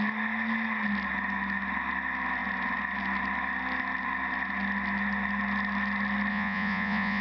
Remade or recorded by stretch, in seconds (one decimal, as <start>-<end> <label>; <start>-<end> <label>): 0.0-6.3 recorded; 6.3-7.2 remade